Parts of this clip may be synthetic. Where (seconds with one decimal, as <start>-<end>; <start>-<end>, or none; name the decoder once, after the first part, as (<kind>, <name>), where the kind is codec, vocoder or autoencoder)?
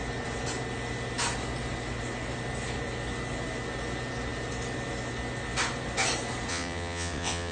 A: 6.5-7.5 (vocoder, WaveNeXt)